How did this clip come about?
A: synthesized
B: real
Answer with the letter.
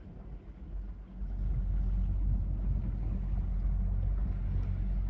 B